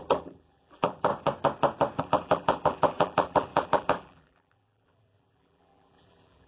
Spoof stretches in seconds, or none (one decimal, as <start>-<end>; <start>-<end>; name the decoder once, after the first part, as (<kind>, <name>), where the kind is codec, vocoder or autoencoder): 0.0-1.1 (vocoder, BigVGAN v2); 2.0-6.5